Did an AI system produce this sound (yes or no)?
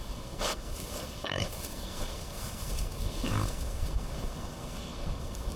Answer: yes